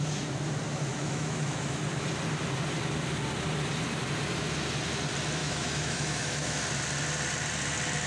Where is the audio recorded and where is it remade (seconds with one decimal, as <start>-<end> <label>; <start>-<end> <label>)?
0.0-0.9 recorded; 0.9-1.8 remade; 1.8-5.4 recorded; 5.4-6.6 remade; 6.6-8.1 recorded